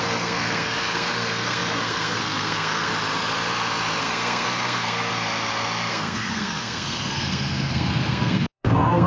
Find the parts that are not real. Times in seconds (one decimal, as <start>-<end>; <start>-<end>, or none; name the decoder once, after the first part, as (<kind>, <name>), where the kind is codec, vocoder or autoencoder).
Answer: 0.0-2.9 (codec, SNAC); 4.0-5.1; 5.9-9.1